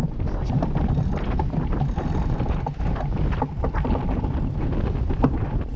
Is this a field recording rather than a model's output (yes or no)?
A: yes